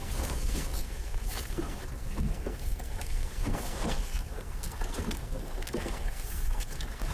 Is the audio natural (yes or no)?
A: no